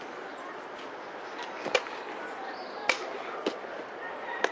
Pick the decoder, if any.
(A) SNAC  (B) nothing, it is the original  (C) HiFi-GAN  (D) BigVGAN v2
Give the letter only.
B